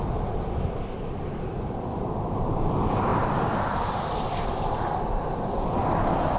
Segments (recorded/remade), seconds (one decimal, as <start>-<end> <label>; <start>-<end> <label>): 0.0-6.4 recorded